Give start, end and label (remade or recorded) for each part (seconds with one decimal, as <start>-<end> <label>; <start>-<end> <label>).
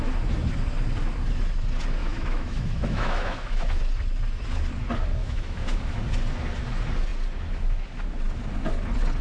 0.0-2.0 recorded; 2.0-3.8 remade; 3.8-5.2 recorded; 5.2-6.0 remade; 6.0-9.2 recorded